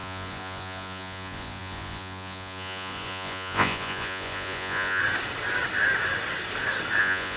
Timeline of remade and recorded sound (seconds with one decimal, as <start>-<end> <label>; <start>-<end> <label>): 0.0-5.0 remade; 5.0-7.0 recorded; 7.0-7.4 remade